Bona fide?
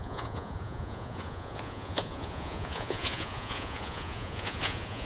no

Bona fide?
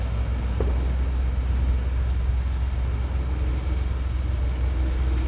yes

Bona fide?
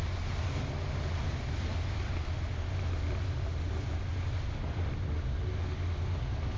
yes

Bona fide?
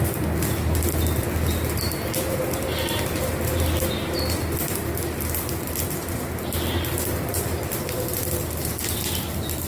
yes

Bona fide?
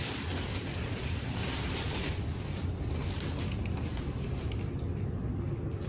yes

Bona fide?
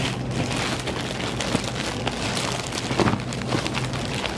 yes